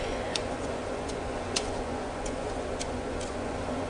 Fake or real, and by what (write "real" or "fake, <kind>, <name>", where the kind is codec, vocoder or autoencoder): fake, vocoder, Vocos